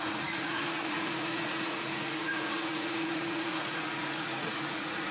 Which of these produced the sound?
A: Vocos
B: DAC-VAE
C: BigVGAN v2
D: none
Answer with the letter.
A